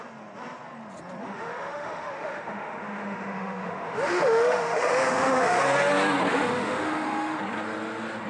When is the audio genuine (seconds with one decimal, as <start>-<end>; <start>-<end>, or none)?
0.0-1.2; 5.6-6.3; 7.4-8.3